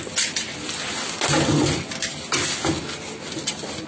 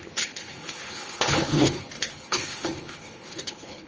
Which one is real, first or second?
first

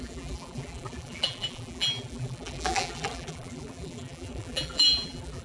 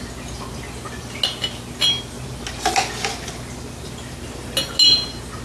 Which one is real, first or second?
second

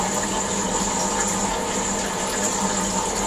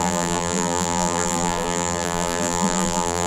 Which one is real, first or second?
first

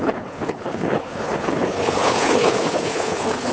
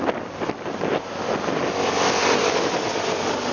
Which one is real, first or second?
second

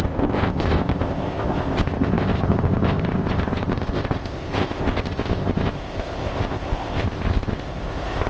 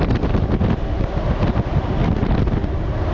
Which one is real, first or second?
second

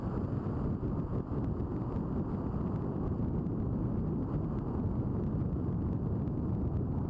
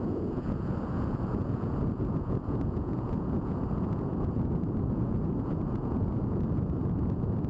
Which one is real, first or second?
first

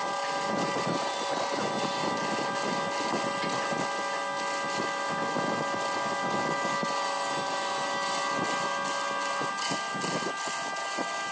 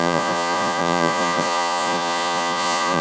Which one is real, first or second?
first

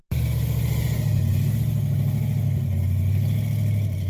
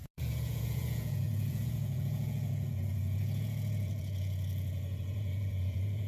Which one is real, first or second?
first